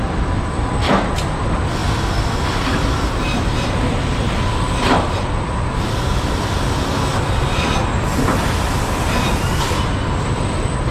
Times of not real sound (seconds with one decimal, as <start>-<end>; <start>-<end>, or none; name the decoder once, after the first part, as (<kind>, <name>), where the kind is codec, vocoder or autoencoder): none